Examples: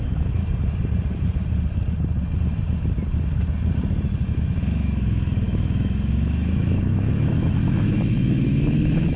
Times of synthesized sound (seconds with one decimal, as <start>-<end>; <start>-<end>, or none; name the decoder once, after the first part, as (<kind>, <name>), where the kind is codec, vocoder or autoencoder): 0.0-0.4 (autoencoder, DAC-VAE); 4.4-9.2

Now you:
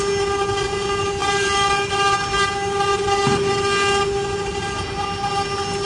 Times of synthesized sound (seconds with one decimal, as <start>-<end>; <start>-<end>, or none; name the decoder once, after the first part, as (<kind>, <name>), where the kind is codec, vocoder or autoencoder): 1.2-2.1 (vocoder, BigVGAN v2); 2.9-3.5

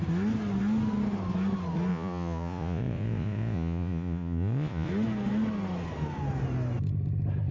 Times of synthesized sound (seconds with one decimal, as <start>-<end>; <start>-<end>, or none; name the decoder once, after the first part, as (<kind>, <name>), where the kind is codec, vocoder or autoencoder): 1.9-4.9 (vocoder, Vocos)

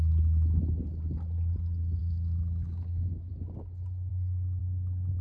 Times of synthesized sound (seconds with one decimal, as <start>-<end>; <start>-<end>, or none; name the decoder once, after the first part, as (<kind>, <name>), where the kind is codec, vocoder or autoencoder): 2.0-3.3 (autoencoder, DAC-VAE); 4.1-4.6

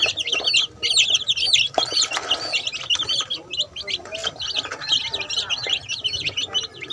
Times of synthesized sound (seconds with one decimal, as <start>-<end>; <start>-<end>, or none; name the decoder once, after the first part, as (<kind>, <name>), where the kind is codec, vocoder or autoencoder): 4.2-5.0 (vocoder, BigVGAN v2)

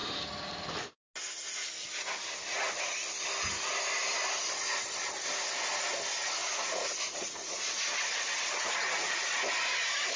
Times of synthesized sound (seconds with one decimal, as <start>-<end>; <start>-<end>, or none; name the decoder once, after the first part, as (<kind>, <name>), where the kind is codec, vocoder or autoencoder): 6.4-7.8 (vocoder, Vocos); 8.6-9.2